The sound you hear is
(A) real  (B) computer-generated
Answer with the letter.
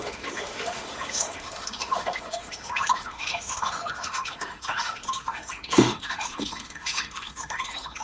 B